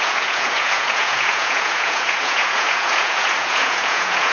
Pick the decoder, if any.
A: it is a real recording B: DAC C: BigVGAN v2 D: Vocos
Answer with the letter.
D